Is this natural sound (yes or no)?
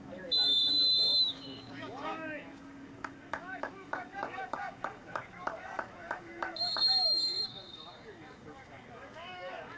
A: no